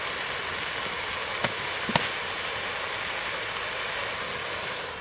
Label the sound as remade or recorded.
recorded